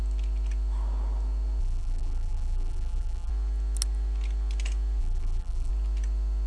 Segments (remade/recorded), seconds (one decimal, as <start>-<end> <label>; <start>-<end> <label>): 0.0-1.6 recorded; 1.6-3.3 remade; 3.3-5.0 recorded; 5.0-5.7 remade; 5.7-6.5 recorded